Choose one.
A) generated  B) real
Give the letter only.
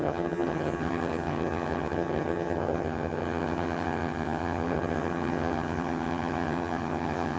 A